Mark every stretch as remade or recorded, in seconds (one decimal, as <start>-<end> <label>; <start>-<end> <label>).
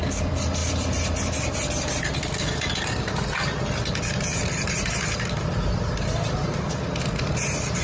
0.0-7.8 recorded